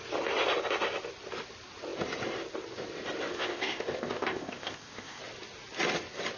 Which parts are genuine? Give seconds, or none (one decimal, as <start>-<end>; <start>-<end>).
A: 0.0-3.3; 5.2-6.4